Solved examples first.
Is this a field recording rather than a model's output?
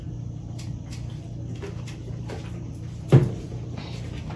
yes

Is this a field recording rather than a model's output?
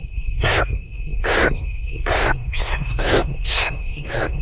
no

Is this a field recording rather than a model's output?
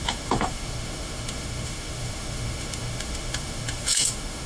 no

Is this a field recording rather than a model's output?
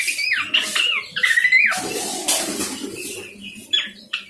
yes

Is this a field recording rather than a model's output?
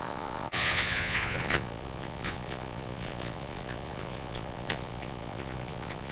no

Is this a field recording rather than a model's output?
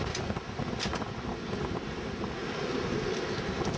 yes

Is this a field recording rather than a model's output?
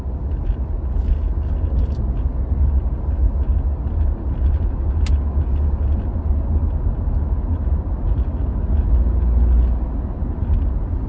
yes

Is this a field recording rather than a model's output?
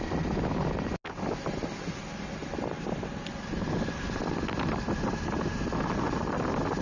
yes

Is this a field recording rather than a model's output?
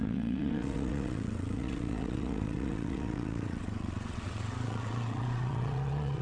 no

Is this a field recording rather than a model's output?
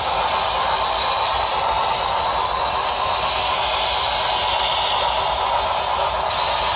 yes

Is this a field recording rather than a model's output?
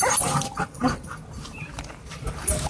no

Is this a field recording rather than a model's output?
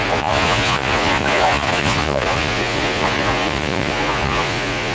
no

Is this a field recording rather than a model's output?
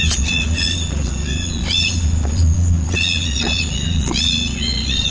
no